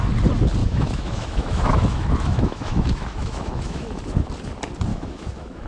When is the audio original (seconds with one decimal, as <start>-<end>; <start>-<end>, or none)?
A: 0.0-0.6; 4.0-4.9